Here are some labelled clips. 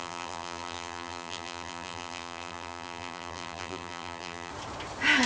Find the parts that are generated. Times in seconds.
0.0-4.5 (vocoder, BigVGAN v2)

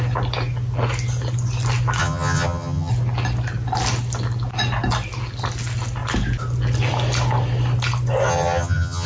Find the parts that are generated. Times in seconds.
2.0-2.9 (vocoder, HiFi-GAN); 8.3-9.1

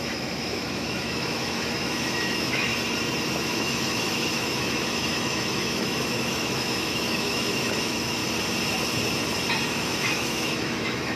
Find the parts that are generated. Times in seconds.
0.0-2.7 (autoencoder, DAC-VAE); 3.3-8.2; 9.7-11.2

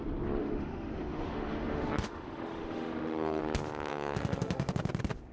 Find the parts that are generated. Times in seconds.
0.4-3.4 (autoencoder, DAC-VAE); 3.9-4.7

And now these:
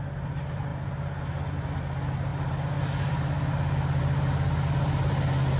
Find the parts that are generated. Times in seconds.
none

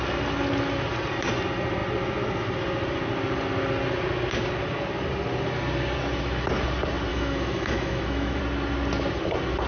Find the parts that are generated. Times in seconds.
7.1-8.4 (autoencoder, DAC-VAE)